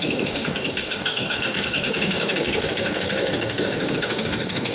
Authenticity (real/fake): fake